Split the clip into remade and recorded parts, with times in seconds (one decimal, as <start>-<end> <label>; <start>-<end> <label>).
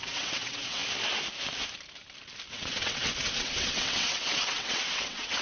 0.0-0.8 remade; 0.8-2.5 recorded; 2.5-5.4 remade